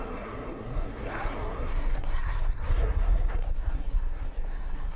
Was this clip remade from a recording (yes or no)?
yes